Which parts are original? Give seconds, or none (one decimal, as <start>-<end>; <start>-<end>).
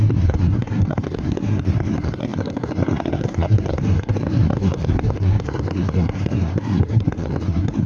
none